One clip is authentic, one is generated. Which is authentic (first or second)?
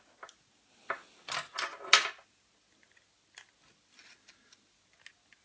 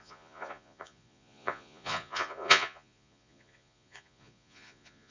first